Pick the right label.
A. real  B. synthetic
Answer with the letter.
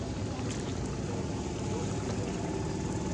A